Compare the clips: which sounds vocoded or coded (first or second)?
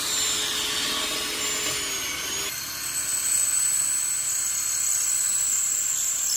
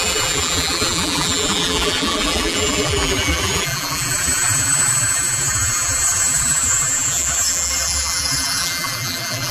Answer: second